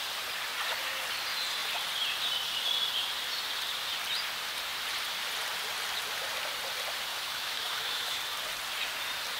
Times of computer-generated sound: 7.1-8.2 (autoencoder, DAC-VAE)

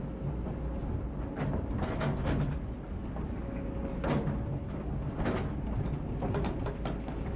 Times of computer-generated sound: none

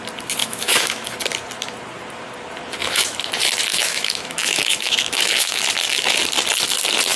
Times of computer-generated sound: 0.4-1.1 (autoencoder, DAC-VAE); 2.8-3.3; 3.7-5.6

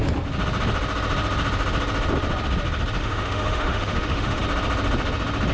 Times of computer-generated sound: 3.0-4.4 (autoencoder, DAC-VAE)

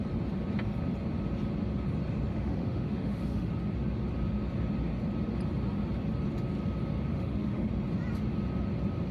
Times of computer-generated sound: 2.3-3.5 (autoencoder, DAC-VAE); 7.1-7.7

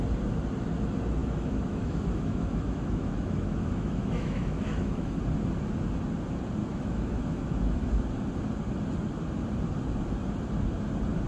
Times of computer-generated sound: 1.2-5.2 (autoencoder, DAC-VAE); 6.6-8.0

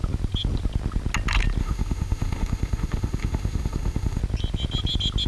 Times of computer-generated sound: 1.6-4.2 (autoencoder, DAC-VAE)

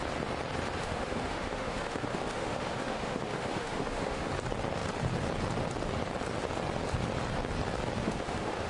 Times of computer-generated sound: 0.8-4.3 (autoencoder, DAC-VAE); 8.0-8.7